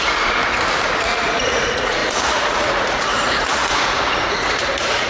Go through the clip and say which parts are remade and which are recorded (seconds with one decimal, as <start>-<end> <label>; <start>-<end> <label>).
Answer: 0.0-0.5 remade; 0.5-1.0 recorded; 1.0-5.1 remade